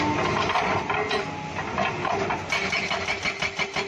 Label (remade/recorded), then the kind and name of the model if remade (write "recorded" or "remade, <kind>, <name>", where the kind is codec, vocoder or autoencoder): recorded